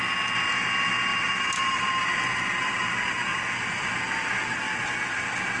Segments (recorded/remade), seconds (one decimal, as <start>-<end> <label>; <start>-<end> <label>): 0.0-1.1 recorded; 1.1-2.9 remade; 2.9-3.3 recorded; 3.3-3.9 remade; 3.9-5.6 recorded